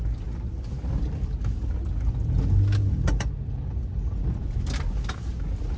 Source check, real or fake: real